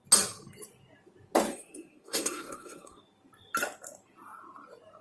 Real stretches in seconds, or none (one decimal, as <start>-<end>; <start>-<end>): 0.0-1.5; 3.0-5.0